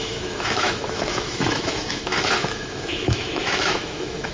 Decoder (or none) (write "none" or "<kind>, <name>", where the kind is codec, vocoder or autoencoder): autoencoder, DAC-VAE